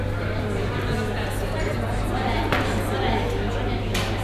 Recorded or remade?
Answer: recorded